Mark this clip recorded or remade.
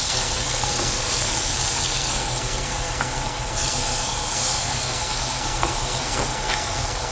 remade